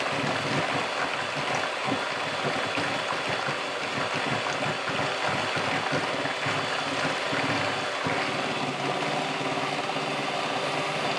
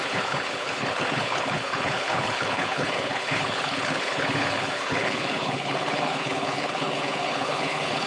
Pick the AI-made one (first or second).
second